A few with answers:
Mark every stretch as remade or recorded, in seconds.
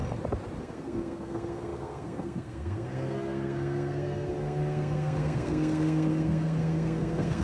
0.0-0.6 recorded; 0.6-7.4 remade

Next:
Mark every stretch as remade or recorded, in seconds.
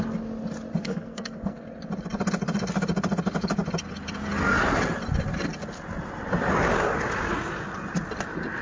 0.0-0.8 recorded; 0.8-1.6 remade; 1.6-8.6 recorded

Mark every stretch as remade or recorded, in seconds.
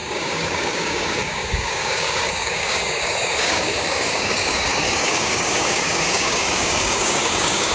0.0-7.7 remade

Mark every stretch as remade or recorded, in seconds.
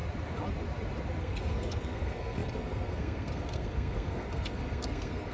0.0-1.2 recorded; 1.2-5.3 remade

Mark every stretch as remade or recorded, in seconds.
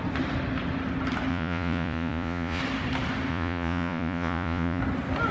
0.0-1.3 recorded; 1.3-2.6 remade; 2.6-3.3 recorded; 3.3-4.8 remade; 4.8-5.3 recorded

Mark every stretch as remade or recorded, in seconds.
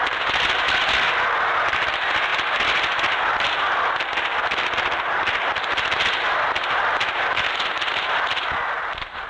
0.0-2.3 recorded; 2.3-7.5 remade; 7.5-9.3 recorded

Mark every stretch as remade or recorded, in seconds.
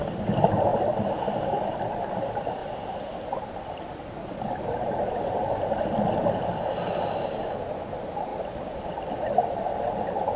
0.0-0.7 recorded; 0.7-1.5 remade; 1.5-8.3 recorded; 8.3-8.9 remade; 8.9-10.4 recorded